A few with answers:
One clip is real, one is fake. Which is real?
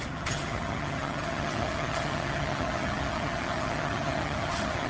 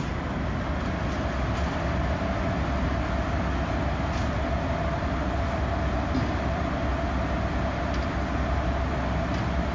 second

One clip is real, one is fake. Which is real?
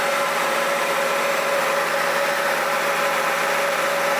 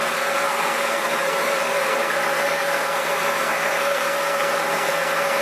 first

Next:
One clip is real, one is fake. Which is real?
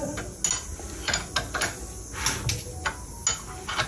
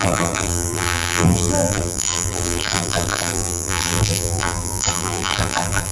first